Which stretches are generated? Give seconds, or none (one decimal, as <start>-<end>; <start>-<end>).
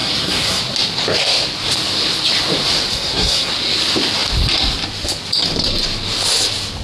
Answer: 0.0-0.6; 2.9-3.5